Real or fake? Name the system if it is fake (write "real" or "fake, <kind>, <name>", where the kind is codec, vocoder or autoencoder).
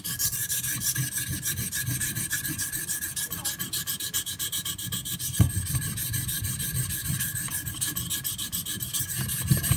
real